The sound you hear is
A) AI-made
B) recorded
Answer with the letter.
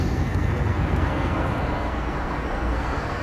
A